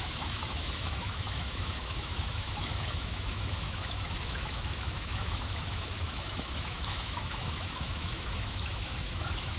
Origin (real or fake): fake